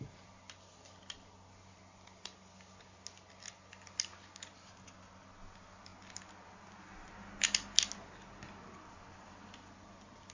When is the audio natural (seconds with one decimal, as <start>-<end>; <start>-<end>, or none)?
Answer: 0.0-10.3